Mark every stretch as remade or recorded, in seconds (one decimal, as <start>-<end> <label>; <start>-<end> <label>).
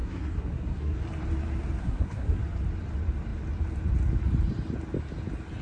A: 0.0-1.0 remade; 1.0-1.8 recorded; 1.8-2.4 remade; 2.4-5.6 recorded